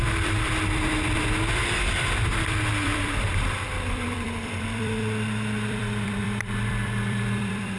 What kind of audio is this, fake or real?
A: fake